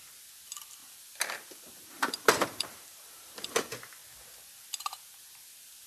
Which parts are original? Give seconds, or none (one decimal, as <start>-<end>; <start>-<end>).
0.0-0.8; 3.6-5.9